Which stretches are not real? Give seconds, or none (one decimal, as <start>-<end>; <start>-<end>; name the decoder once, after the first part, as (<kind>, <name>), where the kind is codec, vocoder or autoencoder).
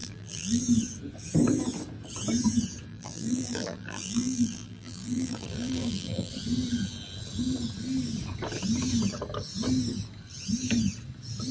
0.0-0.6 (vocoder, BigVGAN v2); 2.9-6.3